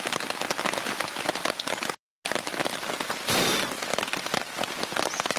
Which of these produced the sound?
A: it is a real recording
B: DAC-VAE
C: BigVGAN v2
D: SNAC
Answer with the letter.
A